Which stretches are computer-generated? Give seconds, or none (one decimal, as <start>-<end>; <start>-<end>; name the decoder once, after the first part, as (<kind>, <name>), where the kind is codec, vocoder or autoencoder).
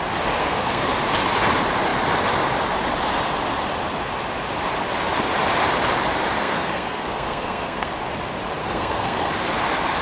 0.4-0.9 (codec, SNAC); 6.4-7.9; 8.6-9.3